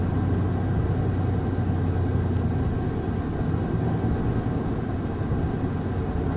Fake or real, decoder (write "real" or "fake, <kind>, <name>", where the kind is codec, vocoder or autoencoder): real